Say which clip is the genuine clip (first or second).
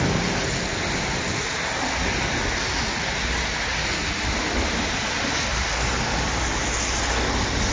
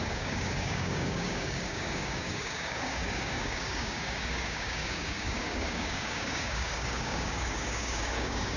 first